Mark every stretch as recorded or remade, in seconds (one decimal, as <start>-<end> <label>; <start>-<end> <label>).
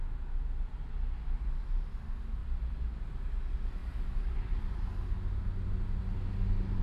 0.0-2.4 recorded; 2.4-3.1 remade; 3.1-3.8 recorded; 3.8-4.9 remade; 4.9-6.8 recorded